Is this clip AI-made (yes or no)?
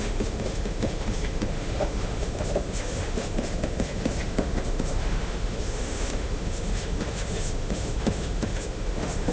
yes